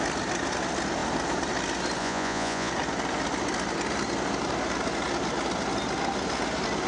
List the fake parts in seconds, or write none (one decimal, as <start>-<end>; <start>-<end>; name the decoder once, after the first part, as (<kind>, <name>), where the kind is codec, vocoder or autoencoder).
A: 2.0-2.7 (vocoder, Vocos)